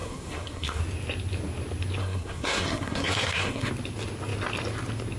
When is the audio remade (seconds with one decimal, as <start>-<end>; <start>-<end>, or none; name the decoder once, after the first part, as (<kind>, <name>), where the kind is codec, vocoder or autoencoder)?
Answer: 0.0-0.8 (codec, SNAC); 2.0-3.7